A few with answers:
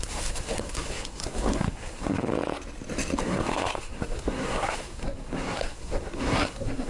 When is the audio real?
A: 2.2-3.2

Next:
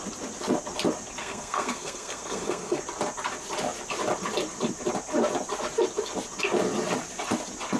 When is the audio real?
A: 0.0-1.2; 2.8-7.8

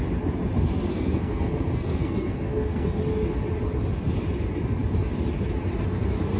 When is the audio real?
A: 0.0-0.9; 3.0-6.4

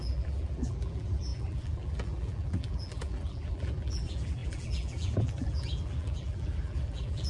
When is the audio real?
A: none

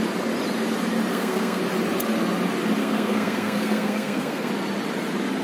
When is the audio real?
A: 0.0-1.1; 1.6-2.8; 4.5-5.4

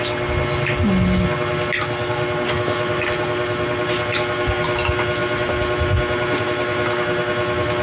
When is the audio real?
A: 0.0-7.8

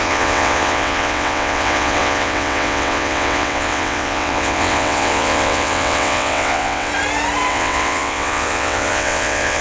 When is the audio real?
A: 6.9-7.5